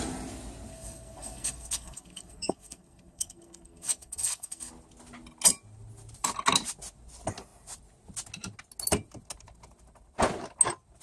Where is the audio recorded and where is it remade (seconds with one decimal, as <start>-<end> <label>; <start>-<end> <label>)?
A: 0.0-0.7 recorded; 0.7-4.7 remade; 4.7-11.0 recorded